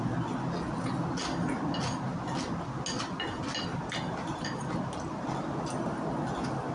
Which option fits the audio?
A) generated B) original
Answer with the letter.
B